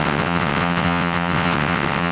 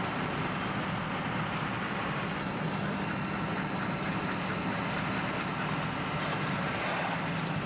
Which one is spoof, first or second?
first